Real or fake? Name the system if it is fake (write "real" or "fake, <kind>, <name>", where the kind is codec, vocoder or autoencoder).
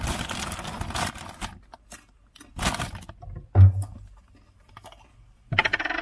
real